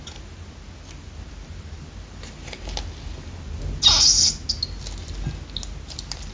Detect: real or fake real